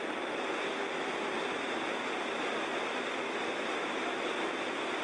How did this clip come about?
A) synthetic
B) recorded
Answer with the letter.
B